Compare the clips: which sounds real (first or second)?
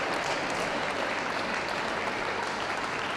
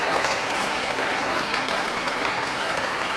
first